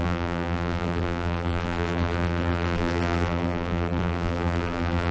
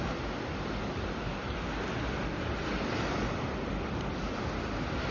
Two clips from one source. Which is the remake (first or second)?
first